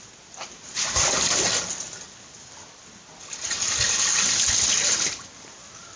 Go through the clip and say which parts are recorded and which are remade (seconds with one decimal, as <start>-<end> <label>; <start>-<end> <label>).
0.0-6.0 recorded